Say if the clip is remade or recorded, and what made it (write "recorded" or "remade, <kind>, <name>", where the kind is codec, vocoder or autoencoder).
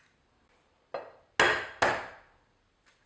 recorded